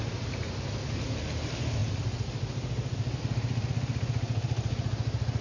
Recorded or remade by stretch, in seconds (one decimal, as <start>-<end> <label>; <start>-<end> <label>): 0.0-5.4 recorded

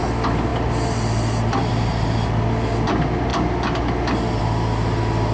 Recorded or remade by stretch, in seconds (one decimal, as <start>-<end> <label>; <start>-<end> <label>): 0.0-5.3 recorded